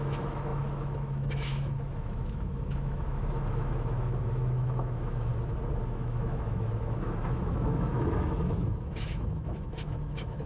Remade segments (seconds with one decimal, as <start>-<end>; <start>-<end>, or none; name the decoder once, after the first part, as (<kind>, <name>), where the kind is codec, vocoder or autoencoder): 0.0-5.3 (autoencoder, DAC-VAE); 5.9-10.5